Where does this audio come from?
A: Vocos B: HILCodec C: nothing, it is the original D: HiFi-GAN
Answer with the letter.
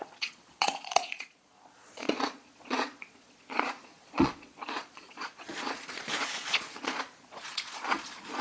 A